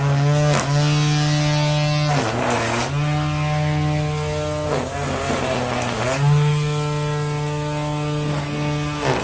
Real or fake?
real